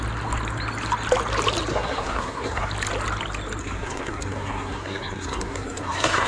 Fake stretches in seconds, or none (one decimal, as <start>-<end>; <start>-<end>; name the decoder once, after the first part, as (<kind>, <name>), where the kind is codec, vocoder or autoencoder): 1.7-2.7 (codec, SNAC); 3.6-6.3